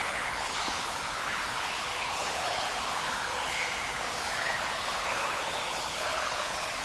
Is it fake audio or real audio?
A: fake